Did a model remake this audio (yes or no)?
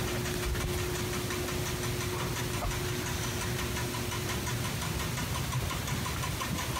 no